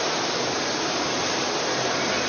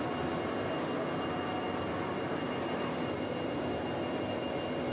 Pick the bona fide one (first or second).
second